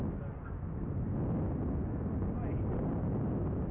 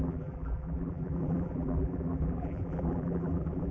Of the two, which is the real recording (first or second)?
first